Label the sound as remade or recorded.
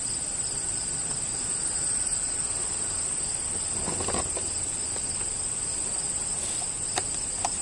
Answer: recorded